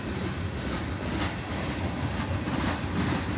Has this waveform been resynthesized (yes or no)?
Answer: no